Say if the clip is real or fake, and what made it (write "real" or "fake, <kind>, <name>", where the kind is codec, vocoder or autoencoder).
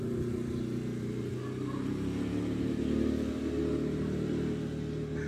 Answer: real